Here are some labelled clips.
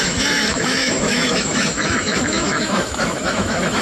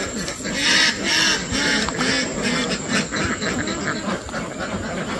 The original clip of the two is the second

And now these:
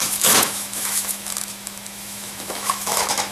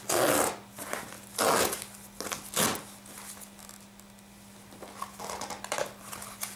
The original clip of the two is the second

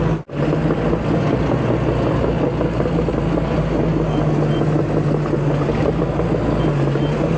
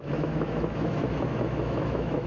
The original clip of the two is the first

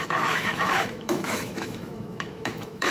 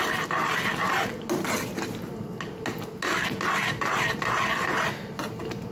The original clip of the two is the second